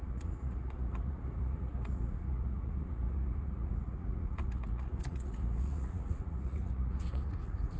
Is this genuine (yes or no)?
no